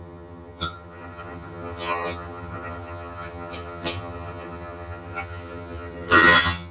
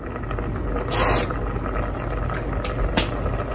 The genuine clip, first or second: second